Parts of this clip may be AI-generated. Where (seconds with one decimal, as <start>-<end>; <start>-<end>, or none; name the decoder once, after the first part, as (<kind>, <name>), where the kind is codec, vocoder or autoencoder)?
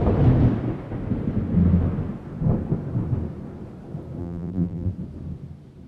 4.2-4.9 (vocoder, BigVGAN v2)